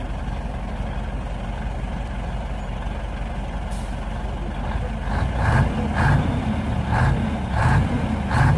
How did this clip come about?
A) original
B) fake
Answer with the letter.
A